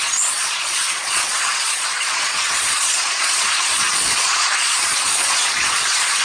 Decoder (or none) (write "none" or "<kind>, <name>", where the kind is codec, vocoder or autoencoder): vocoder, Vocos